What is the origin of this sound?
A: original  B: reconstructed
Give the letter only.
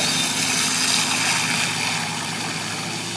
A